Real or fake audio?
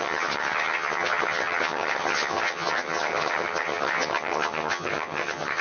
fake